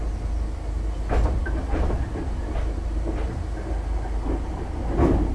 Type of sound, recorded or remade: recorded